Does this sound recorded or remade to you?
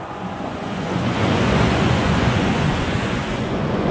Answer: remade